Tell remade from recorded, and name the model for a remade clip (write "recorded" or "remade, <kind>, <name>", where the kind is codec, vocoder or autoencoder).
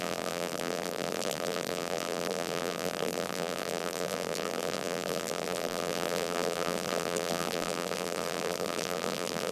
remade, vocoder, BigVGAN v2